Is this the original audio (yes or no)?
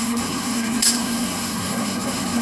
no